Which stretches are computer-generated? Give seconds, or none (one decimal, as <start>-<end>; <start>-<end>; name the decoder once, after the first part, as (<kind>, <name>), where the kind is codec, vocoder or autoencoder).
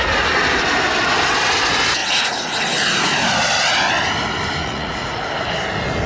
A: 2.0-2.6 (vocoder, Vocos); 4.6-5.2